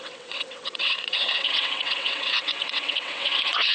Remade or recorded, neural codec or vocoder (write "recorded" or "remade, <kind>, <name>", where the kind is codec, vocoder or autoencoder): remade, vocoder, WaveNeXt